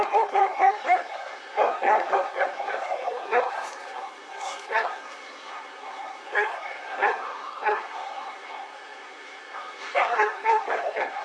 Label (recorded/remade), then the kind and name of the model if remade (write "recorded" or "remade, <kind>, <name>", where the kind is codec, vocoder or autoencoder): remade, codec, SNAC